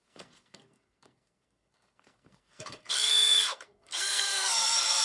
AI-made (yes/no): yes